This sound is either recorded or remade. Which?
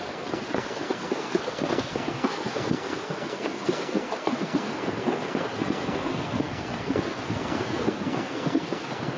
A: remade